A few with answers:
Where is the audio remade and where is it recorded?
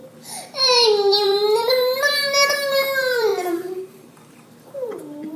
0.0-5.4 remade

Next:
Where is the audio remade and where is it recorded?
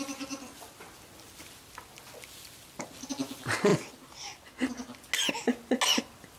0.0-6.4 recorded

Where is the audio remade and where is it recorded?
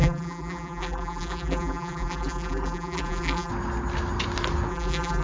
0.0-3.5 remade; 3.5-4.7 recorded; 4.7-5.2 remade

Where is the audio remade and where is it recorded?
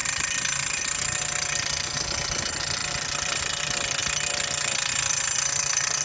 0.0-2.4 recorded; 2.4-4.0 remade; 4.0-4.9 recorded; 4.9-6.0 remade